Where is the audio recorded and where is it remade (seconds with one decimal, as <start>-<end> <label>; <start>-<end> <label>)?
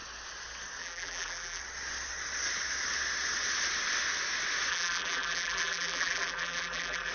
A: 0.0-0.8 recorded; 0.8-1.6 remade; 1.6-4.7 recorded; 4.7-7.1 remade